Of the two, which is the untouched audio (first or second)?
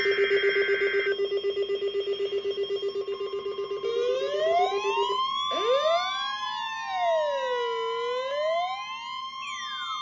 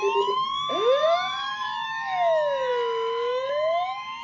first